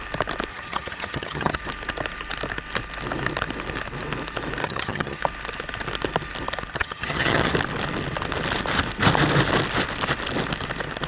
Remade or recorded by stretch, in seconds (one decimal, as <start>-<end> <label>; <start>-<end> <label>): 0.0-0.5 recorded; 0.5-1.6 remade; 1.6-4.6 recorded; 4.6-5.2 remade; 5.2-6.7 recorded; 6.7-7.5 remade; 7.5-11.1 recorded